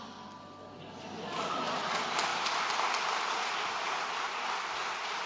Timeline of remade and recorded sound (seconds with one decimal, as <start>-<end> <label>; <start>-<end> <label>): 0.0-5.3 recorded